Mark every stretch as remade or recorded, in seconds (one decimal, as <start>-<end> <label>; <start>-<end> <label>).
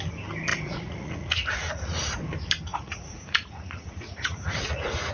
0.0-0.5 recorded; 0.5-2.2 remade; 2.2-2.7 recorded; 2.7-5.1 remade